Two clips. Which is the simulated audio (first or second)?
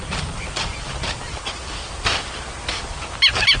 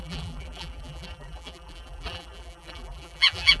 second